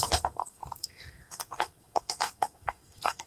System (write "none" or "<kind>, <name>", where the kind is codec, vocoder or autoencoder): codec, SNAC